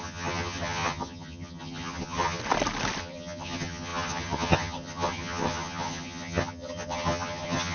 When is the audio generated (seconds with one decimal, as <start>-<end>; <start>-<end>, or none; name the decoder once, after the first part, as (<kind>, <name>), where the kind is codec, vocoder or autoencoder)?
0.0-2.4 (vocoder, HiFi-GAN); 3.0-7.7